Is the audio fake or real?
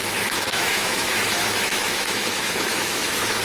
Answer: fake